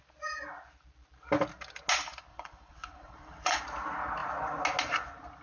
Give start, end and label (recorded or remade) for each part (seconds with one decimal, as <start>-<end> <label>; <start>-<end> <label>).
0.0-2.3 recorded; 2.3-3.6 remade; 3.6-5.4 recorded